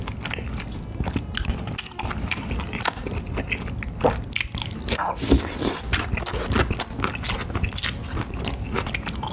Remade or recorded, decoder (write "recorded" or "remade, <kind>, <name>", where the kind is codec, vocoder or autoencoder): recorded